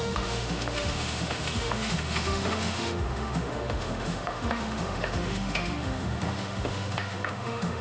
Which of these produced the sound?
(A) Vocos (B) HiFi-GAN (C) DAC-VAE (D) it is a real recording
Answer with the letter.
C